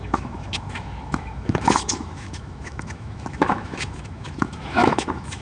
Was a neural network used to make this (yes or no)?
yes